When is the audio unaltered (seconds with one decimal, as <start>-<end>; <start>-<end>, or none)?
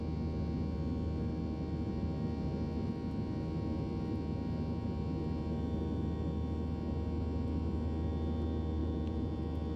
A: 0.0-8.8; 9.4-9.8